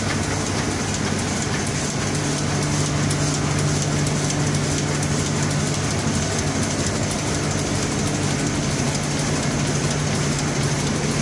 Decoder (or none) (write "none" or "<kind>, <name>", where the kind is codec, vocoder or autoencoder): none